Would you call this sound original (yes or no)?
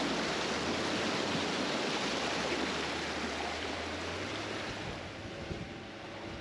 no